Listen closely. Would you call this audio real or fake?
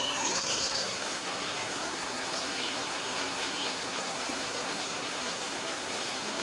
fake